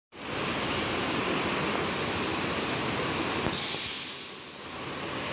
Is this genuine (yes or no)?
yes